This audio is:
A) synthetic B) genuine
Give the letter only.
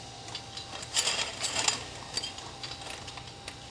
B